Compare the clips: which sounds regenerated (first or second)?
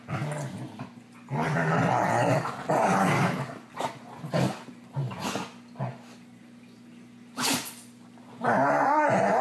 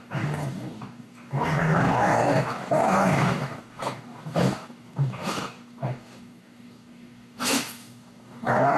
second